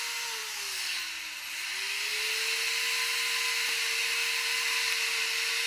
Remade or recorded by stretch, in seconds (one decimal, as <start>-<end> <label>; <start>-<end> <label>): 0.0-5.7 recorded

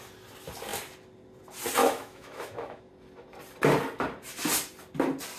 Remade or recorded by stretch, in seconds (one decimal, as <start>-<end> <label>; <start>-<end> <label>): 0.0-1.8 recorded; 1.8-2.9 remade; 2.9-5.4 recorded

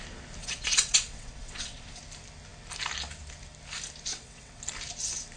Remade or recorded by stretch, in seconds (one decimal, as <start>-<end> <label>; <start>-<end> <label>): 0.0-0.4 recorded; 0.4-2.0 remade; 2.0-4.1 recorded; 4.1-4.6 remade; 4.6-5.4 recorded

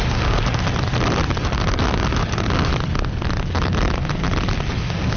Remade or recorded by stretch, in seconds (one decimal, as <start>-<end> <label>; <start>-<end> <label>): 0.0-0.6 remade; 0.6-1.4 recorded; 1.4-2.7 remade; 2.7-4.7 recorded; 4.7-5.2 remade

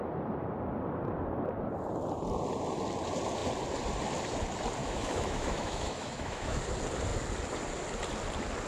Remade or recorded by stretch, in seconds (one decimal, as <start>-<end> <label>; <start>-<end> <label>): 0.0-4.8 recorded; 4.8-6.6 remade; 6.6-8.7 recorded

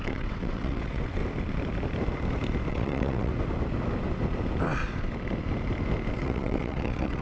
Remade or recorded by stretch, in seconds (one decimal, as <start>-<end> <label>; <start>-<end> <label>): 0.0-1.2 remade; 1.2-2.7 recorded; 2.7-3.3 remade; 3.3-6.1 recorded; 6.1-7.2 remade